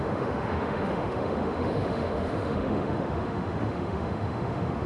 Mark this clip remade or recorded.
remade